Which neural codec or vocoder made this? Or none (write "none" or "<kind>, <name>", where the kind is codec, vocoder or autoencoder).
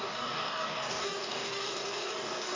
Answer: codec, DAC